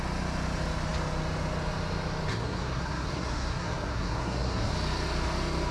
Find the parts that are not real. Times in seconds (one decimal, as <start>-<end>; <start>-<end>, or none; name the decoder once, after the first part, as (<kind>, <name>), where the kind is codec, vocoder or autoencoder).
2.3-4.7 (codec, SNAC)